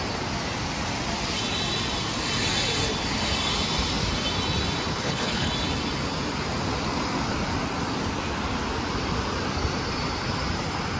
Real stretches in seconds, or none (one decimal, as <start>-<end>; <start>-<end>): 0.0-4.9; 5.5-11.0